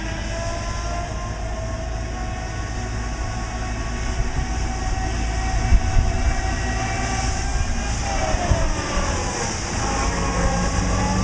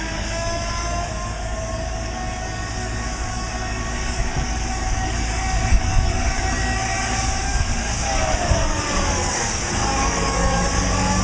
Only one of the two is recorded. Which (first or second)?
first